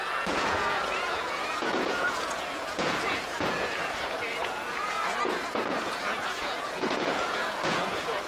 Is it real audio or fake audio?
fake